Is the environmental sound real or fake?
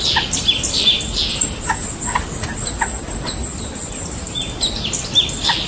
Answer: real